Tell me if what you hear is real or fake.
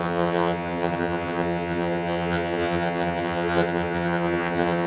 fake